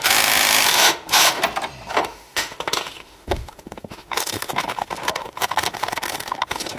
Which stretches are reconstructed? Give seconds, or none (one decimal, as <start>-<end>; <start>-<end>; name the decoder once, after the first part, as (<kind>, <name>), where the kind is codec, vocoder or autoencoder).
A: 0.0-1.4 (autoencoder, DAC-VAE); 1.9-6.8